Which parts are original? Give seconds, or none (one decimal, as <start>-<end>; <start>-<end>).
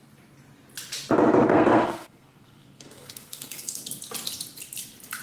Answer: 0.0-1.5; 3.8-5.2